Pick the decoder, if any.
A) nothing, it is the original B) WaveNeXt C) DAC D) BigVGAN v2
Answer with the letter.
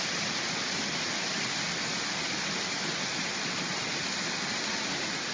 A